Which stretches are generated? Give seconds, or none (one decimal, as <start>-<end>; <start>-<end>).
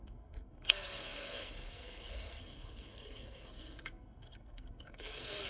0.0-5.5